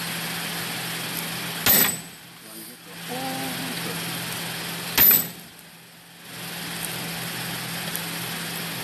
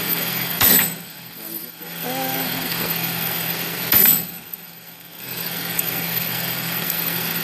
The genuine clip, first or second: first